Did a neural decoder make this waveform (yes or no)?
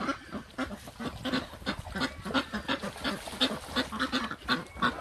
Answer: no